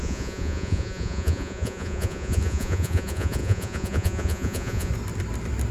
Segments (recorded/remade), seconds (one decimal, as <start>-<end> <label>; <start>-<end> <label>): 0.0-4.9 remade; 4.9-5.7 recorded